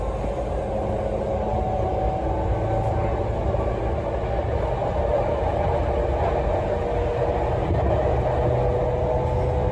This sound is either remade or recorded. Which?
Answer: recorded